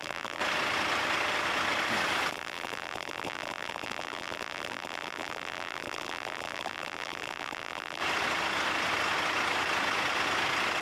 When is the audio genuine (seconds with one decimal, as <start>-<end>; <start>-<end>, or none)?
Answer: 0.4-2.3; 8.0-10.8